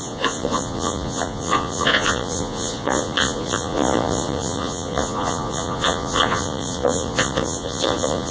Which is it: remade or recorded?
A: remade